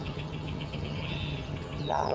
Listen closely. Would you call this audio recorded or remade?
remade